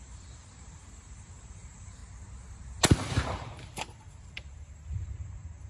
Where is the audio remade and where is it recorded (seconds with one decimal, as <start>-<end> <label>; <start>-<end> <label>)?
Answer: 0.0-2.0 remade; 2.0-3.1 recorded; 3.1-5.7 remade